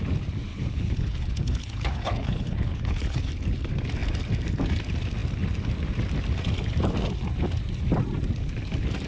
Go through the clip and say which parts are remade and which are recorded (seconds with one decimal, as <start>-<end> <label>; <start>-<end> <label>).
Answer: 0.0-0.5 recorded; 0.5-3.3 remade; 3.3-9.1 recorded